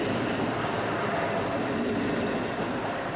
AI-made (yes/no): no